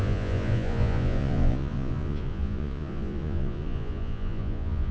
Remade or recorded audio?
remade